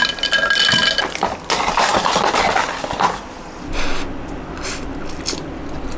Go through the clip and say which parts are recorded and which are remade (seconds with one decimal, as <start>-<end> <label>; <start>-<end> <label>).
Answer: 0.0-6.0 recorded